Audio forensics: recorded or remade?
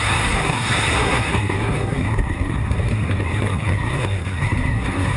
remade